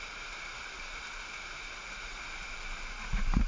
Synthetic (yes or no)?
no